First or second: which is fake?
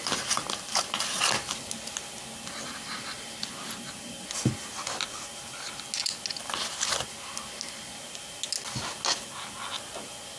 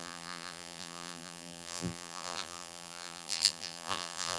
second